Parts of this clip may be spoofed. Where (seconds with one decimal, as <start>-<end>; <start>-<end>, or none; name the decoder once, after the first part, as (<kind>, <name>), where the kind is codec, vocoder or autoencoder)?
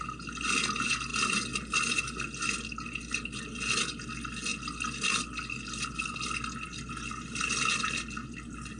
none